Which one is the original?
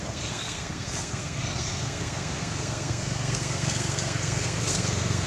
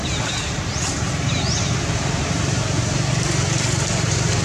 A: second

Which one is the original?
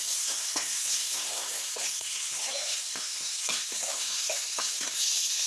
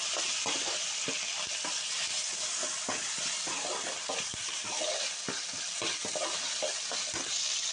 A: second